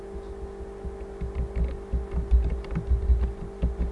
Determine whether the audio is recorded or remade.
recorded